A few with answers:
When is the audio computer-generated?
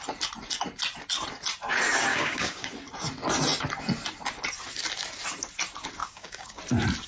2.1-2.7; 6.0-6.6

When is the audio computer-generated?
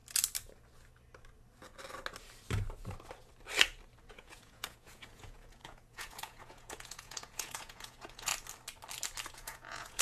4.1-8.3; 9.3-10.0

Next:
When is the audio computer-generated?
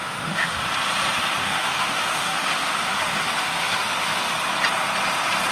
0.0-0.6; 1.4-4.3